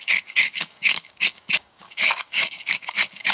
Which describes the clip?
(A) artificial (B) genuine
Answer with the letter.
A